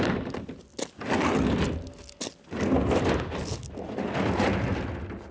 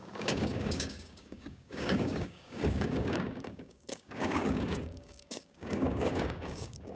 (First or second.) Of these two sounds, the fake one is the second